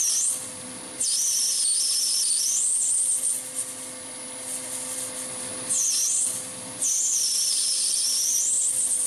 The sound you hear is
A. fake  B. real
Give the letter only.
B